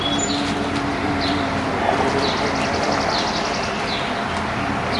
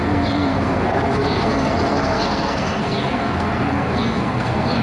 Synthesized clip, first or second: second